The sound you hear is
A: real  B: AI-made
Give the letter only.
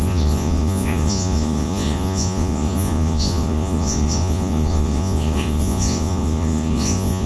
B